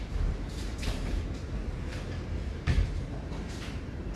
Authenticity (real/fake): fake